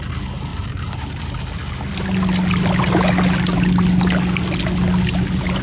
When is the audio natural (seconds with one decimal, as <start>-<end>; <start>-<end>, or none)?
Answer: 0.0-0.5; 1.2-5.6